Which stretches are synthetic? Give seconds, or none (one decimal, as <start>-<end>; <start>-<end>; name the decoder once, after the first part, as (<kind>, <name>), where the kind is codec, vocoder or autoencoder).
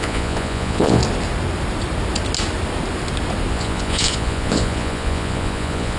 0.0-1.0 (vocoder, Vocos); 3.5-6.0